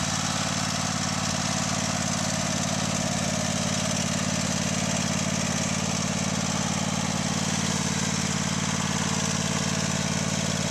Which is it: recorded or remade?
recorded